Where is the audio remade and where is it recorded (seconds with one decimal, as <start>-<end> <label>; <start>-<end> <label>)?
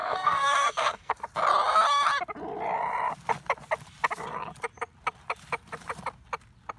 0.0-1.2 remade; 1.2-6.8 recorded